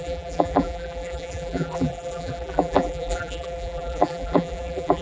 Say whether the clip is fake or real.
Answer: fake